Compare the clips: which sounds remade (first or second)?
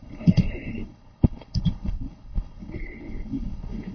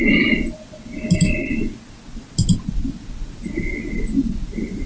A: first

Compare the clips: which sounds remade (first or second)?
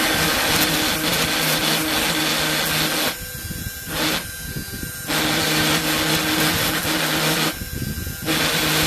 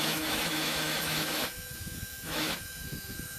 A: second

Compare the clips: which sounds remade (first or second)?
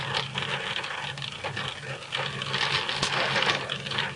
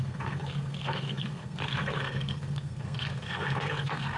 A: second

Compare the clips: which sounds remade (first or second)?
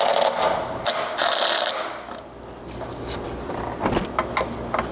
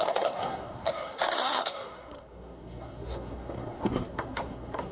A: second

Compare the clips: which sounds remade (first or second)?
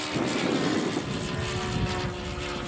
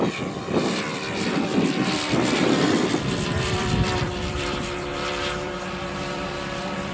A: second